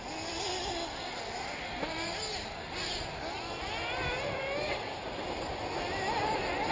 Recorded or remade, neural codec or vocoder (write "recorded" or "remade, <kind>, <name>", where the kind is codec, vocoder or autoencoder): recorded